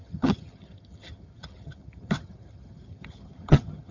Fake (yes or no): yes